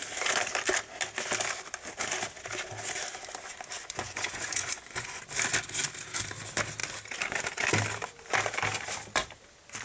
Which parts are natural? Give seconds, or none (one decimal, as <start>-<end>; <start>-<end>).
0.0-3.8; 5.2-9.8